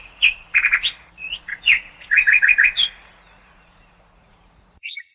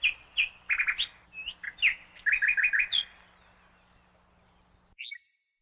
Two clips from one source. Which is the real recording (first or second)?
second